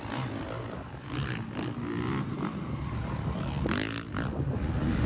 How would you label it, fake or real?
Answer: real